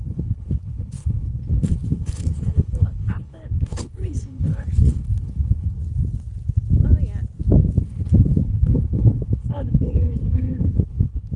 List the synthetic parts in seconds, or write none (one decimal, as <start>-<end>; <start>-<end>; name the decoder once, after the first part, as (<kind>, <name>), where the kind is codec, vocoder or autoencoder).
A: 0.0-5.8 (codec, HILCodec); 7.8-11.4